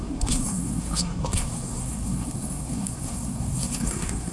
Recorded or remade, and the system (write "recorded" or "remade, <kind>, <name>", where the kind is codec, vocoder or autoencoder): remade, codec, SNAC